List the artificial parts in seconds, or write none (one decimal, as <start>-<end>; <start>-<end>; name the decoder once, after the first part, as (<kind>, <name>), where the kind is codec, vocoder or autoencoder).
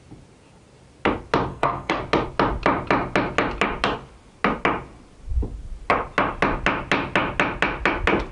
1.5-2.0 (codec, SNAC)